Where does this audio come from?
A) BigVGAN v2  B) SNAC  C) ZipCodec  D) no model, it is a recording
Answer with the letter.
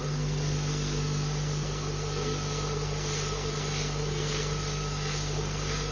B